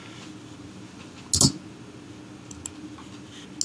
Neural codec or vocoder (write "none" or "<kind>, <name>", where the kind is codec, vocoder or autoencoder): none